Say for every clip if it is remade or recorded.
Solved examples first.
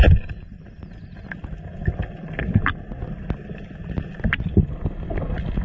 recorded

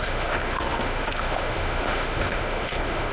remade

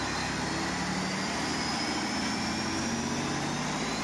recorded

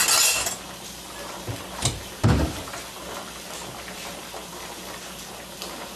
recorded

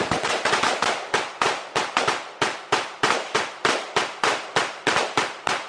recorded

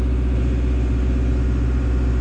recorded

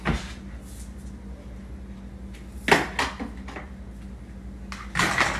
recorded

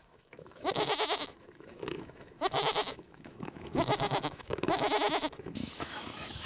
remade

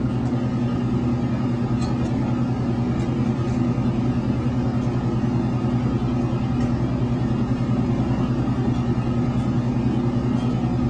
recorded